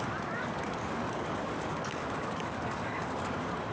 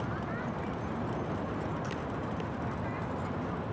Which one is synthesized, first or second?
first